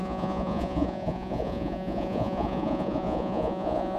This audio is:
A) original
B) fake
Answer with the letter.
B